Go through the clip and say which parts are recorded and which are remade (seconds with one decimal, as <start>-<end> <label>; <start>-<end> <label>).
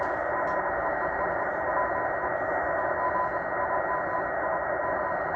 0.0-1.7 remade; 1.7-4.9 recorded; 4.9-5.4 remade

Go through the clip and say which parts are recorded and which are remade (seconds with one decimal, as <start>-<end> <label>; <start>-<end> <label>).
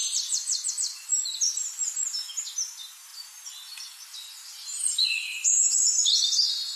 0.0-6.8 recorded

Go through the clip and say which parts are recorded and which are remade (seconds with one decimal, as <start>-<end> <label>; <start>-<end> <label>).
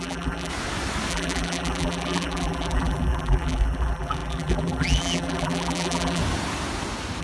0.0-0.5 remade; 0.5-1.1 recorded; 1.1-6.2 remade; 6.2-7.2 recorded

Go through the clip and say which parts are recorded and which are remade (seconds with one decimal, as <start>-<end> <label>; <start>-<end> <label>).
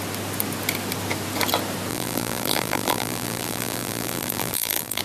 0.0-1.9 recorded; 1.9-5.0 remade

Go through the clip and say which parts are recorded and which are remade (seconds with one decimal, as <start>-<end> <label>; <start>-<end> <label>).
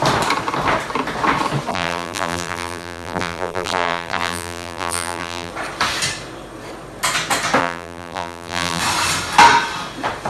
0.0-1.7 recorded; 1.7-5.5 remade; 5.5-7.6 recorded; 7.6-8.8 remade; 8.8-10.3 recorded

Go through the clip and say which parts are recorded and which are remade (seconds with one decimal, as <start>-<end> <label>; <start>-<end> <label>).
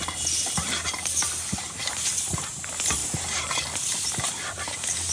0.0-1.8 recorded; 1.8-2.5 remade; 2.5-3.0 recorded; 3.0-5.1 remade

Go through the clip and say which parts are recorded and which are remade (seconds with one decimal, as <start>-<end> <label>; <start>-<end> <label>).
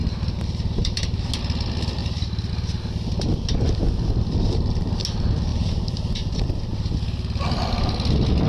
0.0-1.3 remade; 1.3-2.0 recorded; 2.0-2.5 remade; 2.5-5.5 recorded; 5.5-6.6 remade; 6.6-8.5 recorded